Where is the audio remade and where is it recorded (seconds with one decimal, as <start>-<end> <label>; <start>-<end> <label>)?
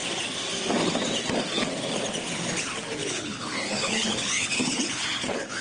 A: 0.0-3.0 recorded; 3.0-5.6 remade